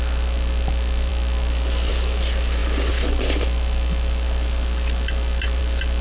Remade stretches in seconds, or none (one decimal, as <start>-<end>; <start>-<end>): none